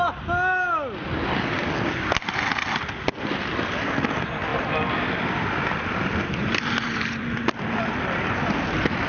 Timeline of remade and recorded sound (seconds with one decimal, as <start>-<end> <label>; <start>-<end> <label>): 0.0-9.1 recorded